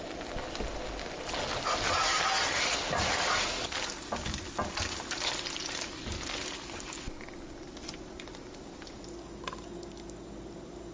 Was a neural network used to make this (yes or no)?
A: no